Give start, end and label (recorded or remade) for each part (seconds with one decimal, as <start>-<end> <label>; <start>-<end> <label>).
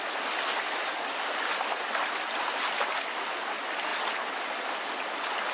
0.0-5.5 recorded